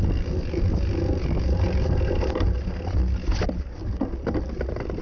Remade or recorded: recorded